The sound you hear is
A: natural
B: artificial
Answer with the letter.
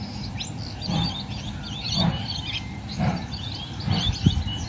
A